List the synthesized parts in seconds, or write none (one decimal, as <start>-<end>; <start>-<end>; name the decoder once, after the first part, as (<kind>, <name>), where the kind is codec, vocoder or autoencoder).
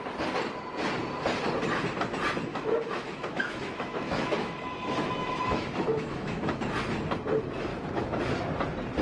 2.5-6.6 (autoencoder, DAC-VAE); 7.7-8.2